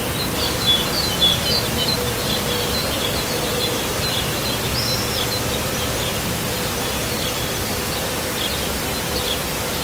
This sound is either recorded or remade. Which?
recorded